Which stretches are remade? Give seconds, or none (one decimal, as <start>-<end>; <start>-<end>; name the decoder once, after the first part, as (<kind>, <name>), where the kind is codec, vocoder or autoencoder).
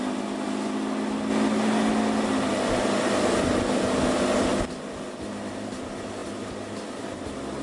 none